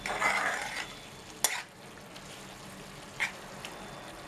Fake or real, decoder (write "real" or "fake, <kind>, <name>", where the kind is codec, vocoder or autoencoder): real